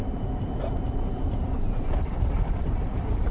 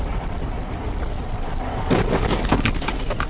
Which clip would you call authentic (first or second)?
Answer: second